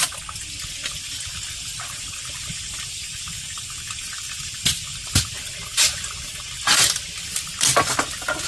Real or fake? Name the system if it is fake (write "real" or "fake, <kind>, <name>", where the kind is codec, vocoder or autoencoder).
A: real